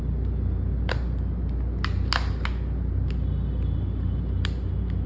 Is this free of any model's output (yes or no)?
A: yes